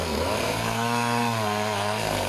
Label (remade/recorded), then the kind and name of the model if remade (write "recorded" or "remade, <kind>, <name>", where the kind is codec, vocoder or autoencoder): remade, codec, SNAC